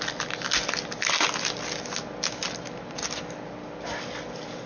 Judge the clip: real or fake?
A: real